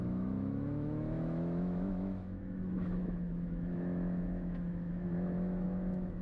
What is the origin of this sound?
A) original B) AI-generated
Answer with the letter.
B